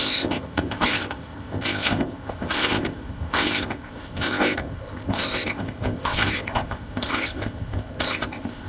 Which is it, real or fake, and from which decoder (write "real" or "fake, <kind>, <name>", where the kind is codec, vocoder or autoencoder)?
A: fake, codec, ZipCodec